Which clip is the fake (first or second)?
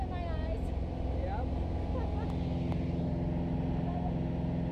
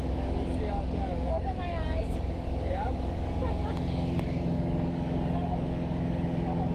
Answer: second